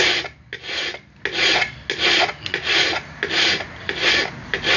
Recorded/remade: recorded